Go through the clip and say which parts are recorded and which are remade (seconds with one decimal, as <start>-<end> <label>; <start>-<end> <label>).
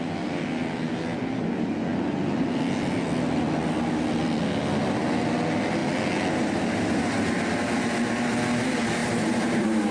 0.0-9.0 recorded; 9.0-9.9 remade